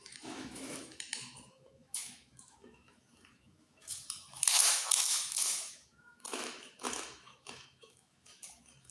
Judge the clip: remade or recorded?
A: remade